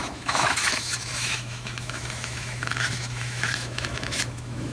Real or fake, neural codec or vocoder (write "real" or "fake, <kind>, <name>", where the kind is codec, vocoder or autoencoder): fake, autoencoder, DAC-VAE